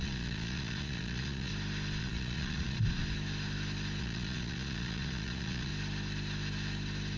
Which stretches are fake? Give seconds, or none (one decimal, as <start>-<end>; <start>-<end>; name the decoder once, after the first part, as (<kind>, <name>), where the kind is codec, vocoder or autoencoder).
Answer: 0.0-1.5 (vocoder, Vocos); 2.0-3.0; 4.0-5.7